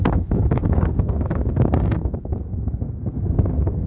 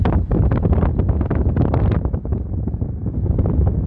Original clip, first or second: second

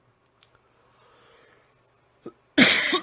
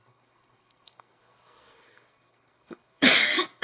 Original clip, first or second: first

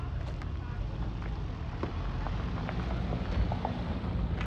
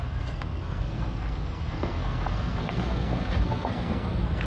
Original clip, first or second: first